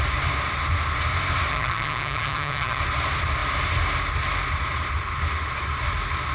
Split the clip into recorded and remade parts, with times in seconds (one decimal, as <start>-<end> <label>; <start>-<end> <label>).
0.0-1.5 recorded; 1.5-2.8 remade; 2.8-6.3 recorded